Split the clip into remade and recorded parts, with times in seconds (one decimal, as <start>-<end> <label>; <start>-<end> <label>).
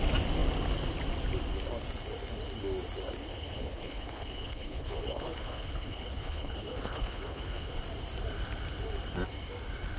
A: 0.0-3.2 recorded; 3.2-7.8 remade; 7.8-10.0 recorded